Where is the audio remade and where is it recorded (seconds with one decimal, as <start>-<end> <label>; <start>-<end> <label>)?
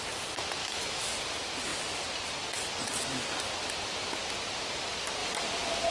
0.0-0.6 recorded; 0.6-1.1 remade; 1.1-5.9 recorded